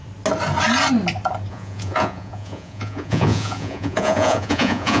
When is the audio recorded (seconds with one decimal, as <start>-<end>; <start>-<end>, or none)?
0.0-1.5